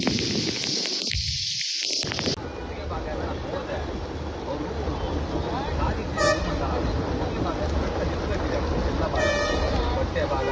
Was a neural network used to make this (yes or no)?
no